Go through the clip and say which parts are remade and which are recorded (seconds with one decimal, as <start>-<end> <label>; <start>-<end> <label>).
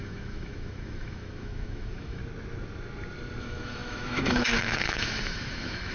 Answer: 0.0-2.2 remade; 2.2-3.4 recorded; 3.4-5.9 remade